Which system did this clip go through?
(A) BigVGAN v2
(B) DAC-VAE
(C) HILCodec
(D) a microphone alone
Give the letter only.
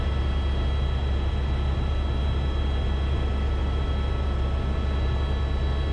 D